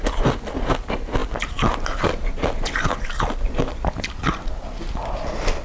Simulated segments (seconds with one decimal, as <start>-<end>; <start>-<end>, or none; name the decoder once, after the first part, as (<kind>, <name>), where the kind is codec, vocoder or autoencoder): none

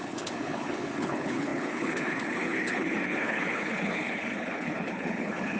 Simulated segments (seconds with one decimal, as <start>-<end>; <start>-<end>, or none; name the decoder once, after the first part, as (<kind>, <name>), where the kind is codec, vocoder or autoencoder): 0.0-5.6 (codec, HILCodec)

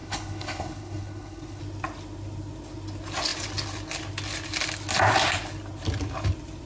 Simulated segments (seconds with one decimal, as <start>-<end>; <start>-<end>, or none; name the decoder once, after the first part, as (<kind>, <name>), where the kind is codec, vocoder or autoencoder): 0.0-1.6 (codec, HILCodec)

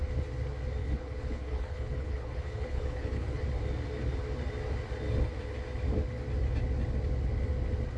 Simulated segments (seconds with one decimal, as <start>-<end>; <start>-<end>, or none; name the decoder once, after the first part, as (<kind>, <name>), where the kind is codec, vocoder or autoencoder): 0.8-3.4 (codec, HILCodec)

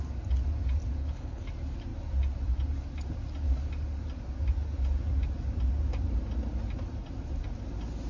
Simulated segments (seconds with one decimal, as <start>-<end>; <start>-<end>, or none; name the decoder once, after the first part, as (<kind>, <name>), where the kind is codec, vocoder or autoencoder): 1.0-1.5 (codec, HILCodec)

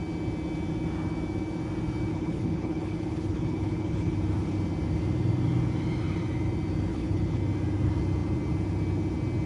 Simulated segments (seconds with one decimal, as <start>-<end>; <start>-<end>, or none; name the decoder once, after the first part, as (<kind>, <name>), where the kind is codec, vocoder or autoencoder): 2.1-4.1 (codec, HILCodec); 6.9-7.4

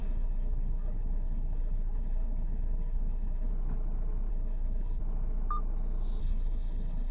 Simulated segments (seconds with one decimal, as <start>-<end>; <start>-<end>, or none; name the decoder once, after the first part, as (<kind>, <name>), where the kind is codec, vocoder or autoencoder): 0.0-3.5 (codec, HILCodec); 4.3-5.0; 6.2-7.1